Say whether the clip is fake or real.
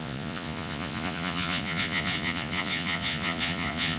fake